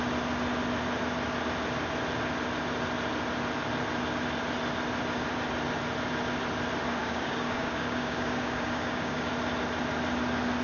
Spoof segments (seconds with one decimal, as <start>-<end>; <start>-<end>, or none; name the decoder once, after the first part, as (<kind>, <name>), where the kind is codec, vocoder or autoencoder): 7.0-9.3 (codec, DAC)